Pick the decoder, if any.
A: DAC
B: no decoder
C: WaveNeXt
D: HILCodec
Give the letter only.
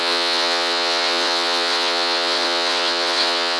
C